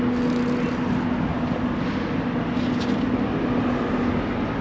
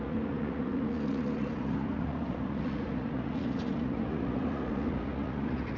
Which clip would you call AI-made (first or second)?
second